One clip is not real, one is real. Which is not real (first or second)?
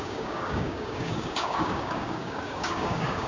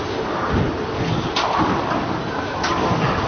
first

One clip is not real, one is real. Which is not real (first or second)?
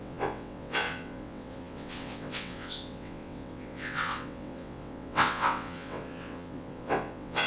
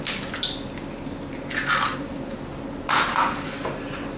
first